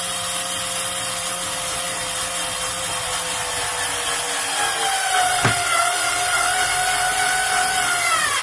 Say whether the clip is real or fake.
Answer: real